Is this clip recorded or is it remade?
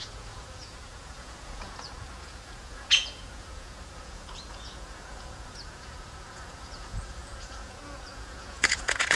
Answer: remade